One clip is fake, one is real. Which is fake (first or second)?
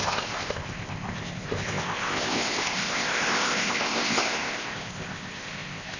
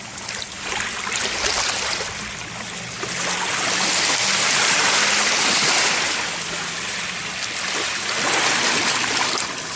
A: first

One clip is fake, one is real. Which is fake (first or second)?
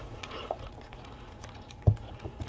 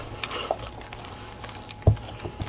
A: first